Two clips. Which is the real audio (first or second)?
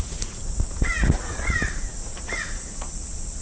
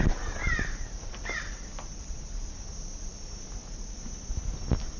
second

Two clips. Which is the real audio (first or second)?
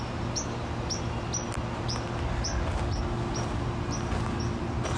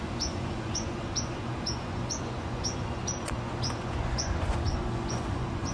first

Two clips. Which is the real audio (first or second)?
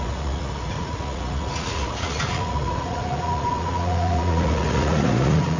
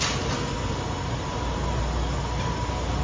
second